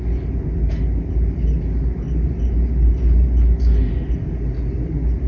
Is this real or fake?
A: real